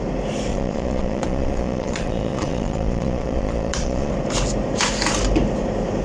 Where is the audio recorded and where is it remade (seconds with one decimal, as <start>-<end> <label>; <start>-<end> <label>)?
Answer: 0.0-0.5 recorded; 0.5-4.1 remade; 4.1-6.0 recorded